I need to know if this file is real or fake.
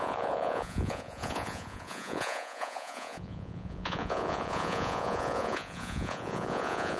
fake